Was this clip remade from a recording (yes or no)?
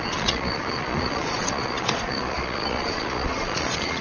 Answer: yes